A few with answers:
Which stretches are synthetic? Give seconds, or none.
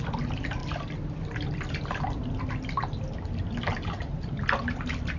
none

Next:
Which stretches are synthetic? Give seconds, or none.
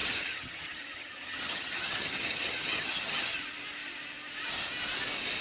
0.0-3.2 (vocoder, HiFi-GAN)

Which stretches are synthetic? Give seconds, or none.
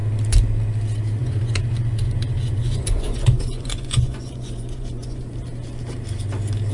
1.2-5.2 (vocoder, Vocos)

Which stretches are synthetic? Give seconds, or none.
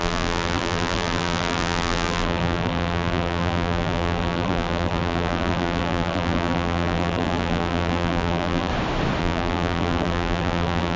0.0-8.7 (vocoder, BigVGAN v2); 9.2-11.0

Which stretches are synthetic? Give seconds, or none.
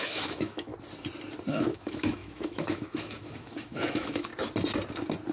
0.0-0.7 (autoencoder, DAC-VAE); 1.5-4.3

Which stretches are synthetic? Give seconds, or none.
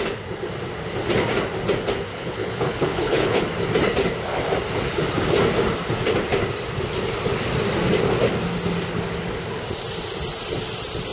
2.1-3.4 (codec, HILCodec)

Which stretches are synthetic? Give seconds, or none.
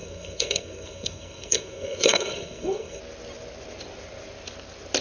0.0-3.0 (codec, SNAC)